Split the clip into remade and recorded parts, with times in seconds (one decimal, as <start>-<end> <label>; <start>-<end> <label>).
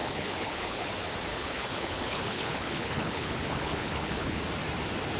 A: 0.0-0.9 remade; 0.9-1.3 recorded; 1.3-4.4 remade; 4.4-5.2 recorded